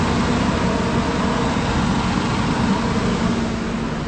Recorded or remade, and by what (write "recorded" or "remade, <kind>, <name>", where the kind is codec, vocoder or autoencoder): recorded